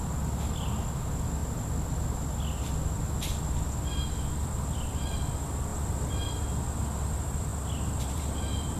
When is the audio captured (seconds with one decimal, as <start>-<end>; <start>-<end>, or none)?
1.4-4.4; 5.7-6.4; 7.5-8.1